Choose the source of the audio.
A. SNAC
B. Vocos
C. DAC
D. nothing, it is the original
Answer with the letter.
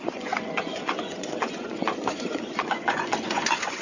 B